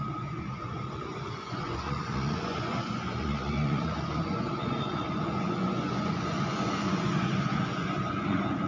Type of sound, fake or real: fake